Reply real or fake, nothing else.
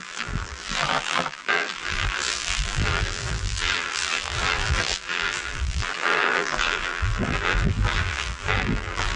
fake